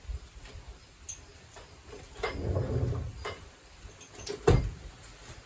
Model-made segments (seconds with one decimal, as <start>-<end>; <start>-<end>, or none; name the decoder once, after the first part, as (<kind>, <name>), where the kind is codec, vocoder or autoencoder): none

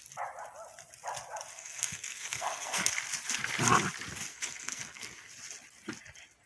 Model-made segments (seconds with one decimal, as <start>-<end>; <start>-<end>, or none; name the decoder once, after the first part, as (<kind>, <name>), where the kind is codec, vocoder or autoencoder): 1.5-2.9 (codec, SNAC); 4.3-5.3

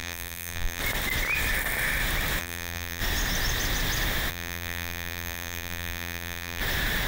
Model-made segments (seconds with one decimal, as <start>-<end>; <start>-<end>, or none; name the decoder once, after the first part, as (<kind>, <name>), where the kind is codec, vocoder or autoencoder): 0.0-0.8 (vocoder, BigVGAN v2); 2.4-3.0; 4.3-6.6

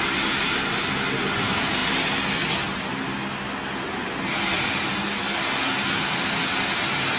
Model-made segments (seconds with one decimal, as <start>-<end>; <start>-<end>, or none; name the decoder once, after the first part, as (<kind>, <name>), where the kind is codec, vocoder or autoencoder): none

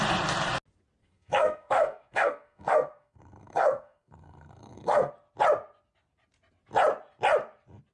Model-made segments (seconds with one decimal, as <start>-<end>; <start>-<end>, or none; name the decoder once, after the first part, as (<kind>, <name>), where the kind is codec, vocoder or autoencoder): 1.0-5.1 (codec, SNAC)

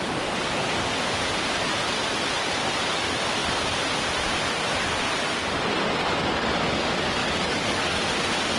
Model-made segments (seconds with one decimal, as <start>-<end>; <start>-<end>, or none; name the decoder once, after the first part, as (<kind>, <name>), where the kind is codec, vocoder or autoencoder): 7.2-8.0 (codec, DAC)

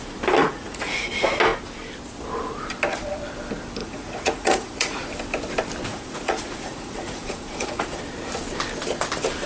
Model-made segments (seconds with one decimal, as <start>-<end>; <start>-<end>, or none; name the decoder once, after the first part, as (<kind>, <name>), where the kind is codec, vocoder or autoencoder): 0.4-1.1 (vocoder, Vocos); 3.8-5.0; 5.9-8.0